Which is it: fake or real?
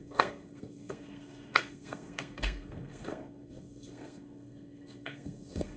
fake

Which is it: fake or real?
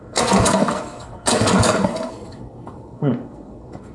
fake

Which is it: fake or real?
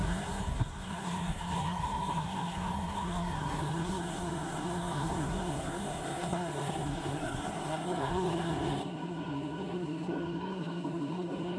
fake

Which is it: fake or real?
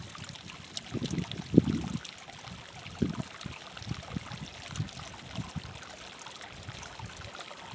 real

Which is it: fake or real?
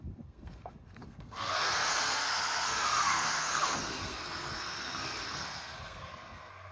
fake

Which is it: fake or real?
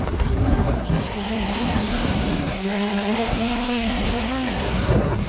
fake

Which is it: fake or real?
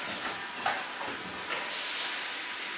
real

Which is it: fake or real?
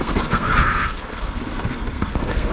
fake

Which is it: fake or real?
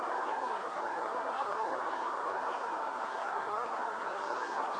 fake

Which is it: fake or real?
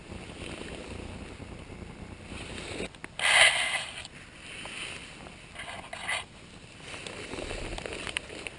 real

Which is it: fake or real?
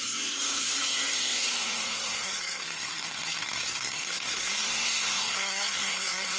fake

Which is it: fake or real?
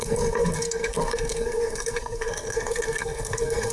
fake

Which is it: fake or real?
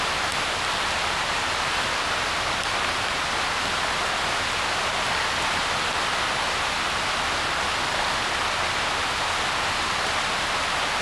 real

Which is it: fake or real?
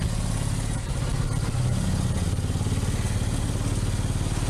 real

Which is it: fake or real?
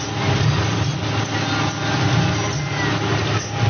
real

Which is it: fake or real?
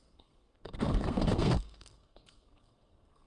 fake